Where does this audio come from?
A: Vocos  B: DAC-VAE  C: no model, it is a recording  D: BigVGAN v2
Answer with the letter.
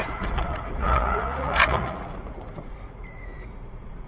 A